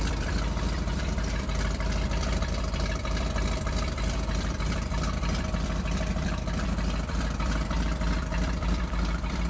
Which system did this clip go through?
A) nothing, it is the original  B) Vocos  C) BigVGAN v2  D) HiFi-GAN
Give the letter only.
C